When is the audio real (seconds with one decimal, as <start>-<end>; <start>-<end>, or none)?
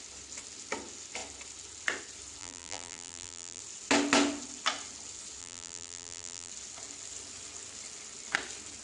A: 0.0-2.4; 3.6-5.4; 6.5-8.8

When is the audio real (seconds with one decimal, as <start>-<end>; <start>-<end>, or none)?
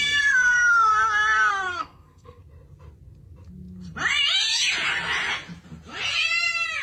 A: 0.9-1.5; 2.4-6.8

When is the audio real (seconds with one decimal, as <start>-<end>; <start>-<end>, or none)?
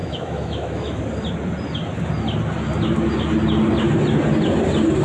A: 1.0-5.0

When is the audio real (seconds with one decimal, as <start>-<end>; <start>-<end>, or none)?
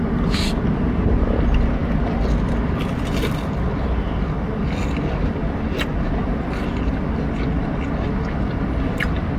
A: 0.0-9.4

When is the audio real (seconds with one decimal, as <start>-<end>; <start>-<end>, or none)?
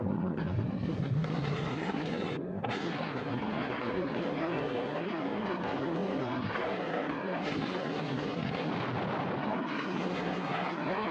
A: 8.7-9.4